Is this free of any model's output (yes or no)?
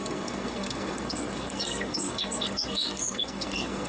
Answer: no